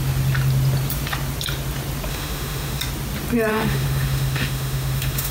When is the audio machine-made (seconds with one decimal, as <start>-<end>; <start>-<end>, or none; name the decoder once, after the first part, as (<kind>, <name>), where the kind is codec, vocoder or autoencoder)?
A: 2.1-2.8 (autoencoder, DAC-VAE); 3.5-5.3